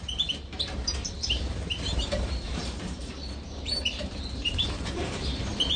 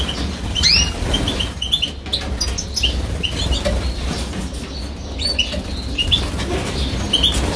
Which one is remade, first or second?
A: first